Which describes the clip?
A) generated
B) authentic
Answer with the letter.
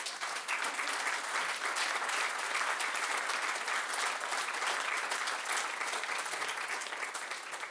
B